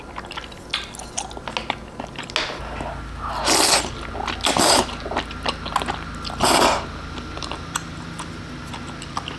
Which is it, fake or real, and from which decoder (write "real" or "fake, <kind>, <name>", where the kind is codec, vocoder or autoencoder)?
real